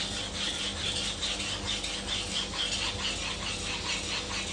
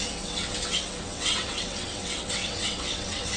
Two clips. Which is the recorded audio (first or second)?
first